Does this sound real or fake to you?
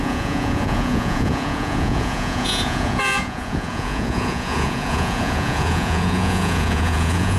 fake